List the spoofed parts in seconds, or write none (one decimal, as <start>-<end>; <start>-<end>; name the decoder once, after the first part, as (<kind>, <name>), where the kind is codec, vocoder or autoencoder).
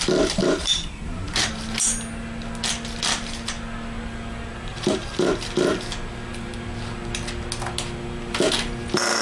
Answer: 0.4-1.5 (vocoder, BigVGAN v2); 4.7-5.3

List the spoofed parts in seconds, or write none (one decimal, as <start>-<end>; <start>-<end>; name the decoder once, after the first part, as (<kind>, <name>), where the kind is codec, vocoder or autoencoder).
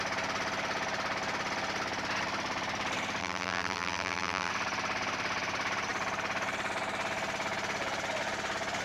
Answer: 3.2-4.5 (vocoder, BigVGAN v2)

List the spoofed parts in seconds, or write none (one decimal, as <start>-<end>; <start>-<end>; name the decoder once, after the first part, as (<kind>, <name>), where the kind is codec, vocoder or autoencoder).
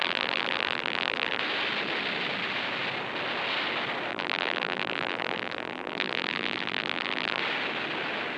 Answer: 0.0-1.4 (vocoder, BigVGAN v2); 4.1-7.4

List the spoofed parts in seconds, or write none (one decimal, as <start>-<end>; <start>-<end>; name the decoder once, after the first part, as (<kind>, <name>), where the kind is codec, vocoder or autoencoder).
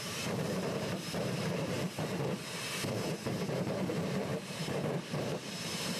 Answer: 0.0-6.0 (vocoder, BigVGAN v2)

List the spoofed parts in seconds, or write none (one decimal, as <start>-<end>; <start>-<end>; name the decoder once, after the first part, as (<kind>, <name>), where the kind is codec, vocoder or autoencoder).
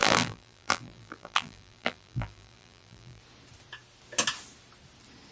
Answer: 0.0-3.2 (vocoder, BigVGAN v2)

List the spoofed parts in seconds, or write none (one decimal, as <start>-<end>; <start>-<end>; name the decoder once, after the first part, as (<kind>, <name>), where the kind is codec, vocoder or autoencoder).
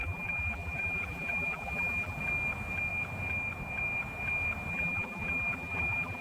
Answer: 0.0-2.2 (vocoder, BigVGAN v2); 4.7-6.2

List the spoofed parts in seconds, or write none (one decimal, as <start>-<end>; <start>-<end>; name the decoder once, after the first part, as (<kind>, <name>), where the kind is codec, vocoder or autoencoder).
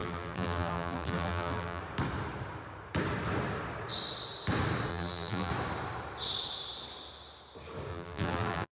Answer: 0.0-1.8 (vocoder, BigVGAN v2); 4.9-5.5; 7.9-8.7